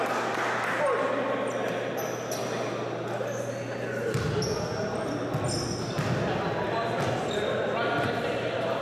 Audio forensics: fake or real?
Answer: real